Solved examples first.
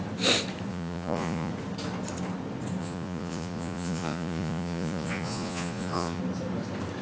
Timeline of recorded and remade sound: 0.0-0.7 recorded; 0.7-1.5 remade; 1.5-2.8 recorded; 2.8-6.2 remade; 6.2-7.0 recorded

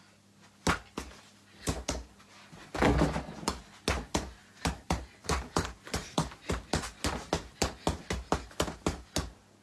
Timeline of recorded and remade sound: 0.0-4.4 recorded; 4.4-6.4 remade; 6.4-9.6 recorded